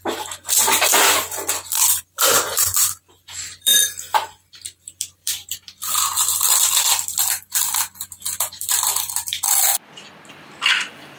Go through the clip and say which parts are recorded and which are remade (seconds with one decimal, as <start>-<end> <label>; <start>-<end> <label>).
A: 0.0-9.7 remade; 9.7-10.3 recorded; 10.3-11.2 remade